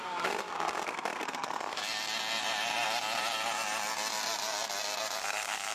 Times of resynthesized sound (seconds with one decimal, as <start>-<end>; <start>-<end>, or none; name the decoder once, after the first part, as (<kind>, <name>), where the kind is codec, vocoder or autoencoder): 0.0-1.8 (codec, SNAC); 5.2-5.7